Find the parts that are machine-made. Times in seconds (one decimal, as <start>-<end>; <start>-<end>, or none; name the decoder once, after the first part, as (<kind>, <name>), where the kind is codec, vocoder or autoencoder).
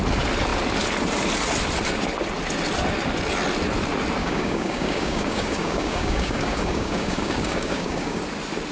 4.2-8.2 (codec, DAC)